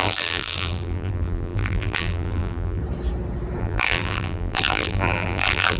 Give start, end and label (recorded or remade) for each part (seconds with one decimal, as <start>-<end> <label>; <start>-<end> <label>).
0.0-2.8 remade; 2.8-3.6 recorded; 3.6-5.8 remade